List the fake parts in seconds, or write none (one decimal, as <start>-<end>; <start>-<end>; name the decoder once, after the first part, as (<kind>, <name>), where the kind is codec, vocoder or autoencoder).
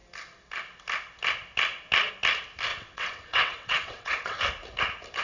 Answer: 2.7-4.4 (vocoder, WaveNeXt)